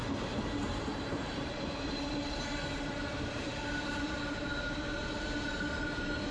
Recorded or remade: remade